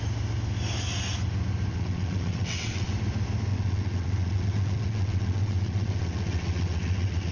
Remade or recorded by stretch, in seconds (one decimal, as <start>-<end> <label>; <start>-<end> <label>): 0.0-1.7 recorded; 1.7-2.9 remade; 2.9-3.5 recorded; 3.5-7.3 remade